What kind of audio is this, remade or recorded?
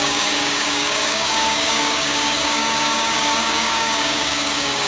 remade